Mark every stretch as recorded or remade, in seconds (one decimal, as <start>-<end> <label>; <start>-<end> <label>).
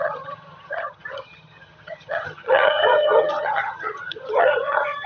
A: 0.0-5.1 remade